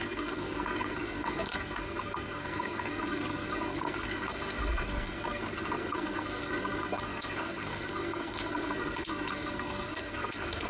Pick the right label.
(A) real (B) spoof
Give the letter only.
B